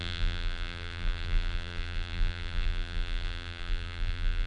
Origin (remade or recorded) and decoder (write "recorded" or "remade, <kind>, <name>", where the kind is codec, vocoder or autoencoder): remade, vocoder, BigVGAN v2